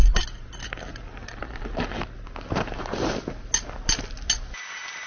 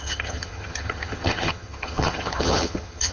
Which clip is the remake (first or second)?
second